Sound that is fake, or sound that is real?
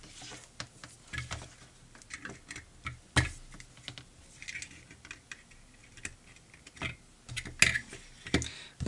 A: real